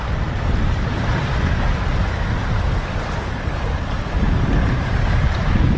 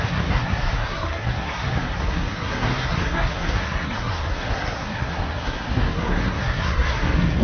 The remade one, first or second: second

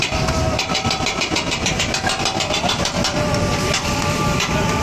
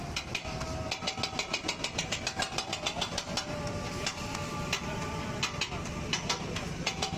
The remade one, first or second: first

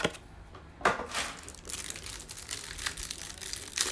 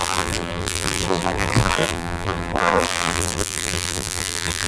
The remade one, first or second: second